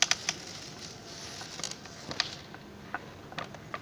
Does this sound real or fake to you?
real